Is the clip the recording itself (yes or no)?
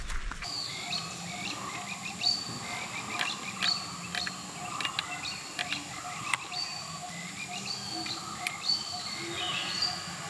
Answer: yes